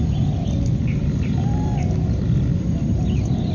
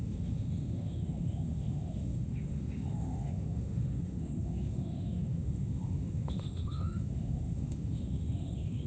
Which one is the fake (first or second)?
second